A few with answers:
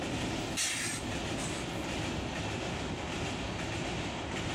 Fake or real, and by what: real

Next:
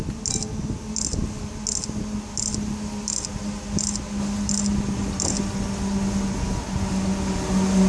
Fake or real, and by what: real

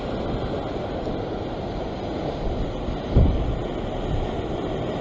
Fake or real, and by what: real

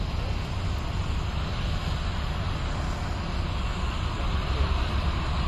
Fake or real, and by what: real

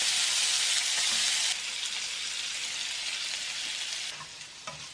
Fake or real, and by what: real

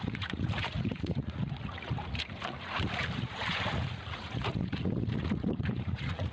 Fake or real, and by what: fake, vocoder, Vocos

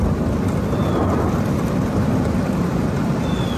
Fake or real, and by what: real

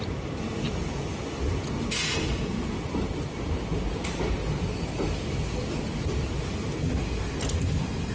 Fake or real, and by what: real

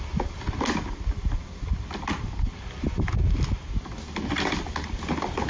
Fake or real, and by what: real